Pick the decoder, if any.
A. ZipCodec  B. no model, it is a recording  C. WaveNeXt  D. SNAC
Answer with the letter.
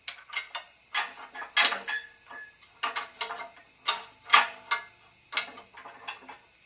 B